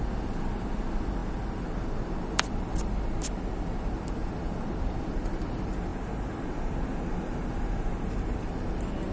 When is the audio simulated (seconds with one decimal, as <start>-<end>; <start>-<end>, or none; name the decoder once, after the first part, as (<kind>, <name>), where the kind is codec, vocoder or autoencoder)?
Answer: none